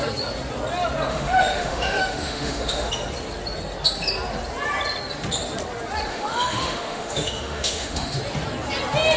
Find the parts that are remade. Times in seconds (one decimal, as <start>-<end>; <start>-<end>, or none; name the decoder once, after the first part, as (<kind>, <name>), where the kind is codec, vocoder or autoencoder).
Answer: 1.1-2.9 (autoencoder, DAC-VAE); 6.1-8.2